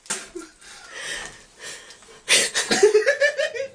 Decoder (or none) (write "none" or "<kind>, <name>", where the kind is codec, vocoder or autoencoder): none